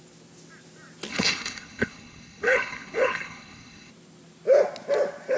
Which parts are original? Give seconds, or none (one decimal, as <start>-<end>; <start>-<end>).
0.0-1.1; 3.9-5.4